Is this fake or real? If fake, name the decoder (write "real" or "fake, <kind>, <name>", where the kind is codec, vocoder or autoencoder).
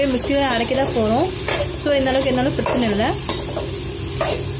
real